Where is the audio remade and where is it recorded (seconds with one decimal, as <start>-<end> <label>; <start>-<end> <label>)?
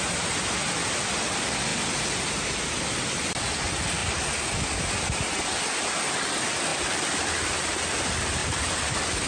0.0-1.7 recorded; 1.7-2.3 remade; 2.3-6.7 recorded; 6.7-7.2 remade; 7.2-8.4 recorded; 8.4-9.3 remade